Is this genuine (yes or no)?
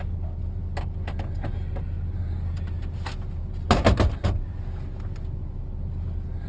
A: yes